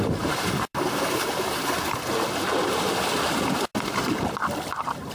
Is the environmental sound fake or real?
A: real